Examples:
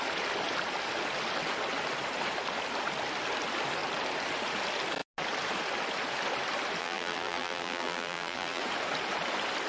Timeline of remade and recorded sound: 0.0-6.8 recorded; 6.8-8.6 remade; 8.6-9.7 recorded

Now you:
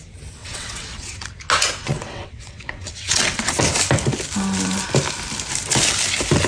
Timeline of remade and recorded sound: 0.0-0.4 recorded; 0.4-1.4 remade; 1.4-1.8 recorded; 1.8-3.6 remade; 3.6-6.5 recorded

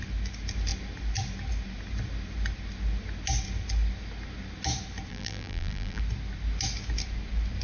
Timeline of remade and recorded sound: 0.0-5.1 recorded; 5.1-6.0 remade; 6.0-7.6 recorded